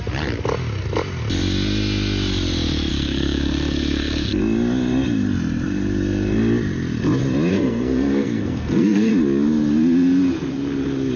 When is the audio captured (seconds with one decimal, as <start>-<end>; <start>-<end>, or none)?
0.0-2.9; 4.4-7.5; 9.1-11.2